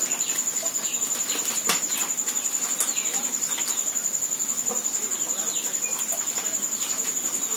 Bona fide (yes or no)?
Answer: yes